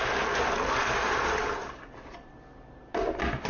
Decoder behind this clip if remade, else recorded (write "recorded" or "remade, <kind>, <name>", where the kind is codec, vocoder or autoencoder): remade, vocoder, BigVGAN v2